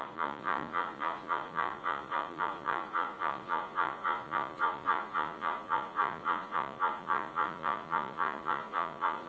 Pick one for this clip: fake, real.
fake